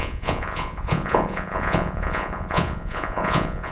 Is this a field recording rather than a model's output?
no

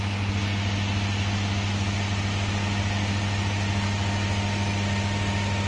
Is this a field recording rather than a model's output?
yes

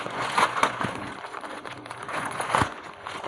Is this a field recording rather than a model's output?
no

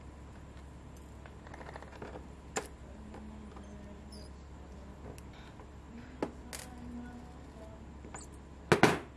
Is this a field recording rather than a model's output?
yes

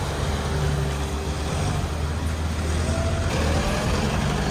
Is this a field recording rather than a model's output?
yes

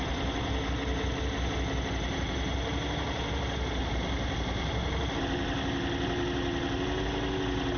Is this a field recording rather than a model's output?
yes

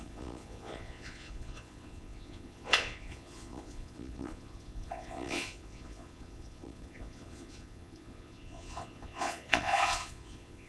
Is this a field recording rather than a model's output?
no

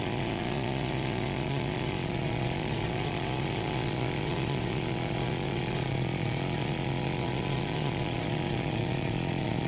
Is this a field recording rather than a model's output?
no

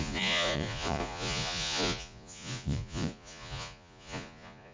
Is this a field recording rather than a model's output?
no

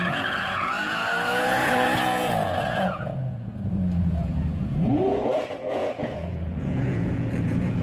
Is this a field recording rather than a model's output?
no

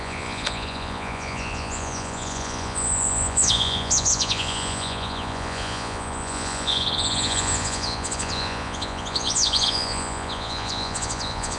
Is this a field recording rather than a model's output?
no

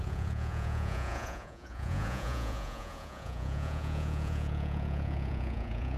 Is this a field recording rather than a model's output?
no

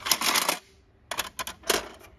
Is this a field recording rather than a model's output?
yes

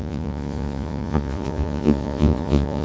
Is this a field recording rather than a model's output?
no